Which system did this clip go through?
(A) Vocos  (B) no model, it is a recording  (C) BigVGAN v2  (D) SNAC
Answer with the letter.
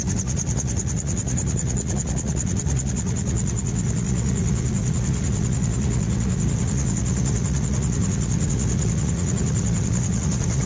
A